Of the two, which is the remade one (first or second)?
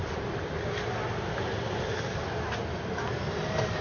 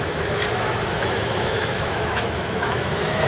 second